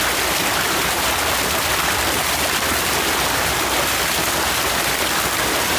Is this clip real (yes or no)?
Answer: yes